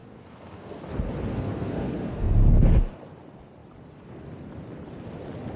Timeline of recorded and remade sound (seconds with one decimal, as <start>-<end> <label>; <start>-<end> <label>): 0.0-0.8 remade; 0.8-1.3 recorded; 1.3-2.9 remade; 2.9-5.6 recorded